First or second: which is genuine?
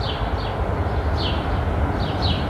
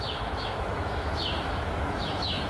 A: first